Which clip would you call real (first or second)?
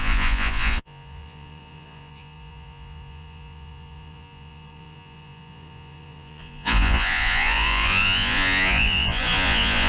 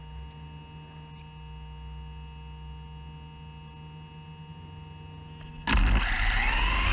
second